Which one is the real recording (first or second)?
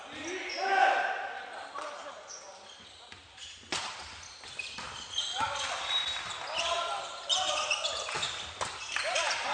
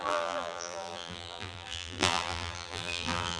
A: first